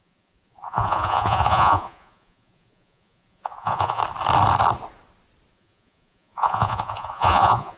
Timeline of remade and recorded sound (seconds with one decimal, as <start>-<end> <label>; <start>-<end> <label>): 0.0-4.0 remade; 4.0-5.5 recorded; 5.5-7.8 remade